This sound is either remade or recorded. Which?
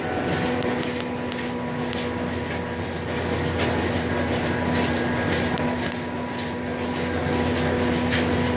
recorded